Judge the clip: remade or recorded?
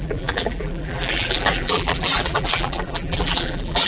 remade